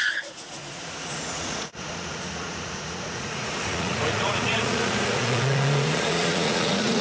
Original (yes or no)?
no